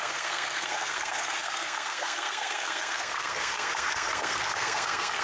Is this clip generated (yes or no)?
yes